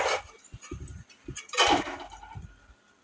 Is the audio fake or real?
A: real